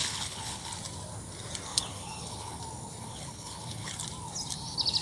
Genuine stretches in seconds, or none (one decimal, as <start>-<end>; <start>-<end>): 0.7-1.7; 2.6-3.0; 3.9-5.0

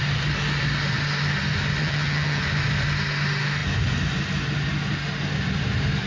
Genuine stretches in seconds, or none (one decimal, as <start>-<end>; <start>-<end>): 0.0-1.8; 2.4-6.1

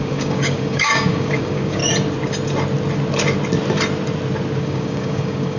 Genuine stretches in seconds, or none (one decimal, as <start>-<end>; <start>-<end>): 1.8-4.6

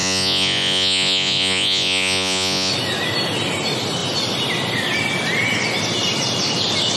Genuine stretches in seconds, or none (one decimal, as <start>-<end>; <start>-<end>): 2.7-7.0

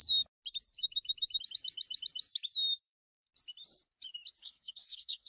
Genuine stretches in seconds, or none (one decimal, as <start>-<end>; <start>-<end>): 0.0-2.8; 3.3-4.4

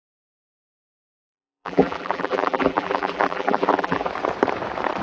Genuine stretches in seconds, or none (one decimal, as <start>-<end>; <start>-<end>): 0.0-1.1; 4.1-5.0

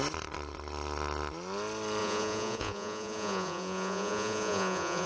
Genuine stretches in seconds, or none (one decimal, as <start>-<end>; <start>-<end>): 0.0-2.0

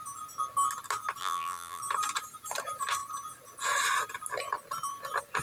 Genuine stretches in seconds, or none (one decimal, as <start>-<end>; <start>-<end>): 0.0-1.2; 1.8-5.4